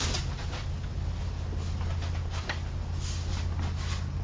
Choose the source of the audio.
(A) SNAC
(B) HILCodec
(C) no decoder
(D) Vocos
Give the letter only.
C